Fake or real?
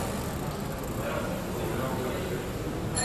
real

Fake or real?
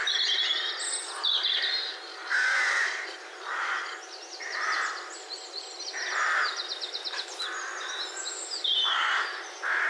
real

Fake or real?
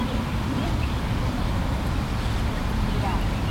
real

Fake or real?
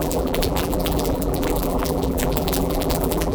fake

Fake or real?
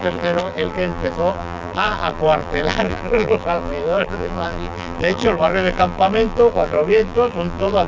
fake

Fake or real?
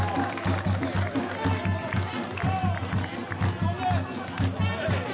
real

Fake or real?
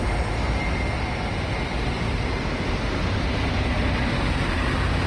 real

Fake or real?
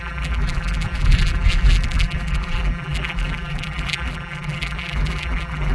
fake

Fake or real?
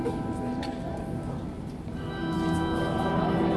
fake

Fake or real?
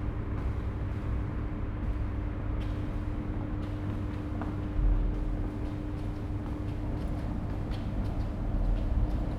real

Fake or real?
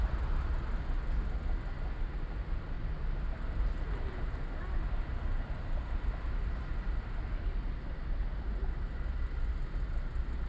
real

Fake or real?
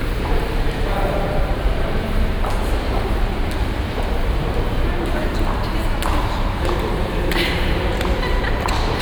fake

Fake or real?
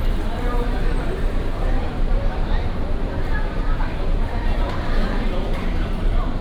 fake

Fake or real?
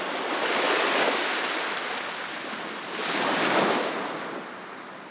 real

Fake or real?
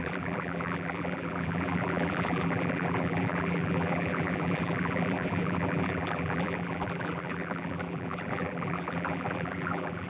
fake